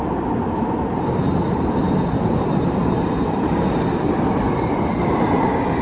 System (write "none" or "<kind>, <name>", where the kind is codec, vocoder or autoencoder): vocoder, BigVGAN v2